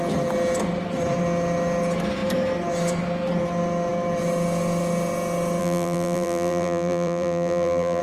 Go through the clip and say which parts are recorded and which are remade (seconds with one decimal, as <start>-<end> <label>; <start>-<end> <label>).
0.0-5.6 recorded; 5.6-8.0 remade